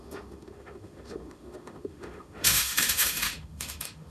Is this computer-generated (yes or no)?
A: yes